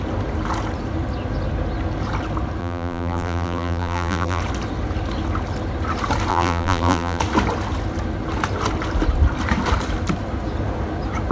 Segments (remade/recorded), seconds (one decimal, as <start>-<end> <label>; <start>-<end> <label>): 0.0-2.6 recorded; 2.6-4.4 remade; 4.4-6.3 recorded; 6.3-7.2 remade; 7.2-11.3 recorded